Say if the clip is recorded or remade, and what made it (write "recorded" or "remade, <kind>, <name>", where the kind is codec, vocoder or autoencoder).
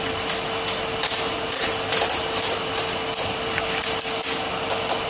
recorded